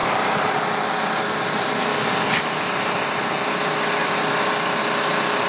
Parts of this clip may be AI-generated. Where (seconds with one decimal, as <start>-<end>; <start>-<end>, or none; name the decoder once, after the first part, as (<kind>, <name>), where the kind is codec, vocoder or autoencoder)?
0.0-0.6 (vocoder, BigVGAN v2)